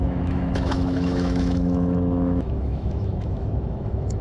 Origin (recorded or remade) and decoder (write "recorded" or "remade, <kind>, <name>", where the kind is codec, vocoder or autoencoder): remade, autoencoder, DAC-VAE